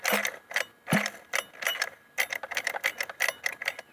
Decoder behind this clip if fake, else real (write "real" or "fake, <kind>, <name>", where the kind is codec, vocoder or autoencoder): real